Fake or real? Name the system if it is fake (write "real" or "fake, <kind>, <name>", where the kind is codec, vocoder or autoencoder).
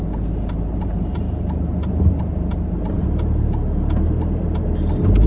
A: real